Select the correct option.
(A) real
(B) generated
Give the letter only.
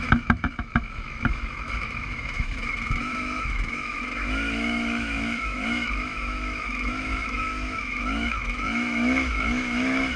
B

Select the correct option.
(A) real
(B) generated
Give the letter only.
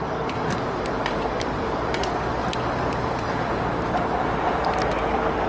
B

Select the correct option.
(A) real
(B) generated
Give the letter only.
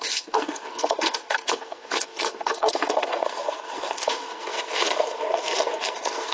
B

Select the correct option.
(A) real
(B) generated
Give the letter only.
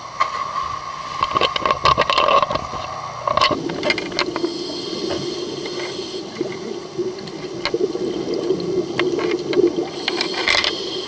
A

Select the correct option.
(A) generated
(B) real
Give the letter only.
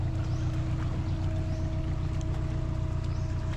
B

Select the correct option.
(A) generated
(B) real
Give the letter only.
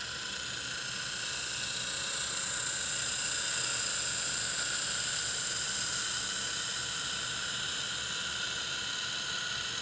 B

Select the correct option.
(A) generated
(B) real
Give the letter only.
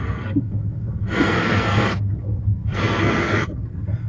A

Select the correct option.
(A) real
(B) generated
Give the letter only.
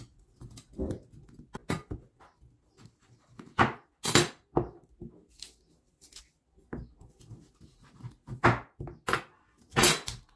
A